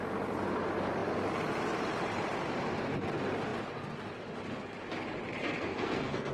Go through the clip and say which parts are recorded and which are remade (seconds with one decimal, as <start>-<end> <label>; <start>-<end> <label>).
0.0-5.4 recorded; 5.4-6.3 remade